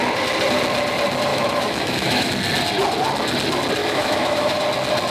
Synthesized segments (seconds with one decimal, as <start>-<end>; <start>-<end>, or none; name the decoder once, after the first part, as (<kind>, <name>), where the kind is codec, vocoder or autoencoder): 1.3-2.3 (autoencoder, DAC-VAE); 3.8-4.6